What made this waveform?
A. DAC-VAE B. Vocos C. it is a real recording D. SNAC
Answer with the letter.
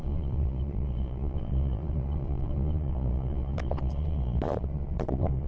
B